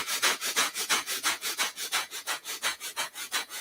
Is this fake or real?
fake